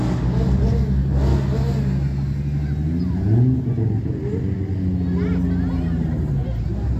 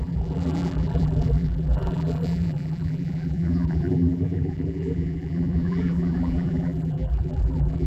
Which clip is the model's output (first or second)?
second